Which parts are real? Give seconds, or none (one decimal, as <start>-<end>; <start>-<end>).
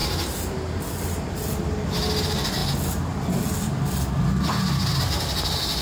0.8-5.8